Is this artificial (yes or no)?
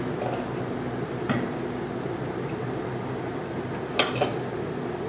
no